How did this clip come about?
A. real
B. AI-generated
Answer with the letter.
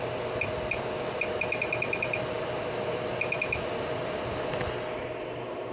A